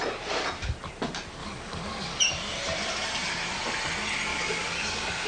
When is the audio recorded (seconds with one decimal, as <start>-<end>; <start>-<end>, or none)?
0.0-1.4; 2.2-4.3